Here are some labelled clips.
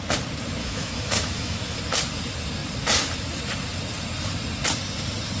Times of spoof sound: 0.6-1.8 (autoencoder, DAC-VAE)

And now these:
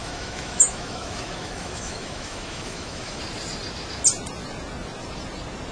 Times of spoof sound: 0.0-3.2 (autoencoder, DAC-VAE)